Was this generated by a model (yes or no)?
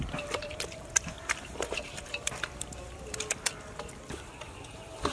yes